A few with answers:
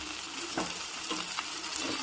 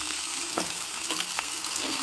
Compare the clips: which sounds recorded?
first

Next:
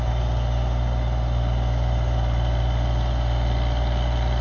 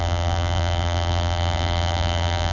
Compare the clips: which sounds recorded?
first